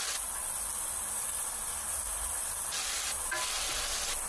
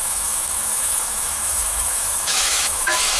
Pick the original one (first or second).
first